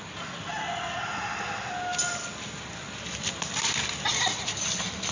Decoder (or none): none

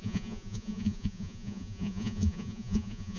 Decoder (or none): vocoder, Vocos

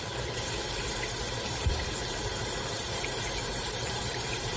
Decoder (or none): vocoder, BigVGAN v2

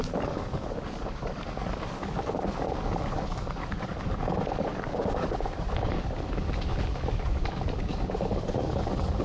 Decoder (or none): codec, DAC